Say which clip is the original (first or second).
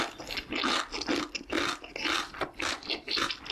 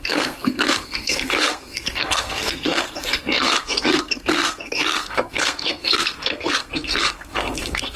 first